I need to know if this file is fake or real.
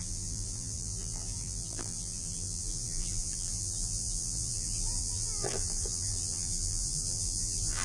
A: fake